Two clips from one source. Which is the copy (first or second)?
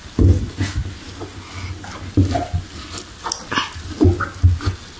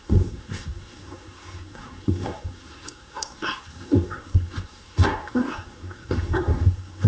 second